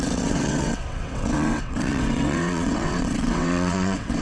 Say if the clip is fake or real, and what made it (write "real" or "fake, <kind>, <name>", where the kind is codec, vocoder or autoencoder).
fake, vocoder, WaveNeXt